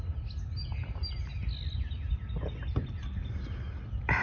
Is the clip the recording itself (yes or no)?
yes